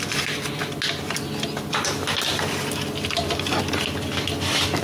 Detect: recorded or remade recorded